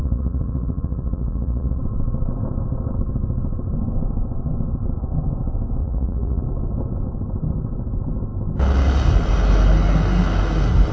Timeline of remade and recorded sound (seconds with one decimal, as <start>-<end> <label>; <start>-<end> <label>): 0.0-1.8 remade; 1.8-5.8 recorded; 5.8-6.4 remade; 6.4-10.9 recorded